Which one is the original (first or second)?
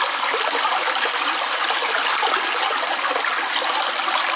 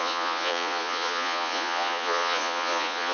first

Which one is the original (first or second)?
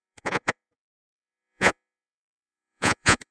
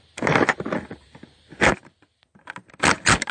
second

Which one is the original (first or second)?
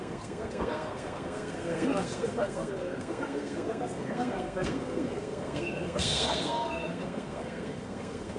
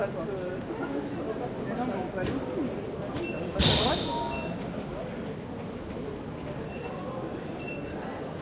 second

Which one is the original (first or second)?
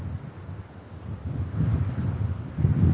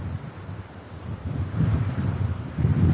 first